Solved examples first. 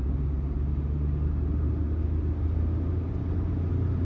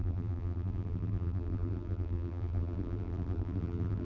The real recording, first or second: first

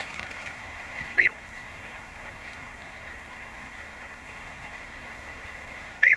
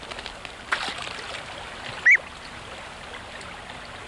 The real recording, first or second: second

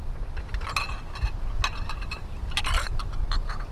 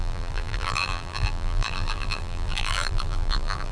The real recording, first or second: first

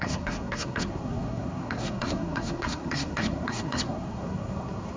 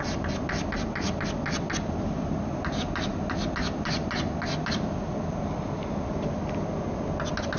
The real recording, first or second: second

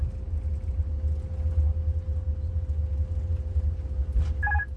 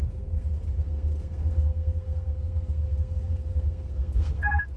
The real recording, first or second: first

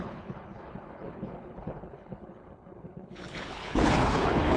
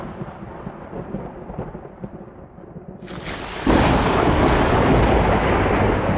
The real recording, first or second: second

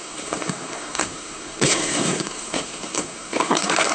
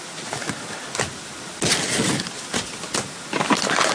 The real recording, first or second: second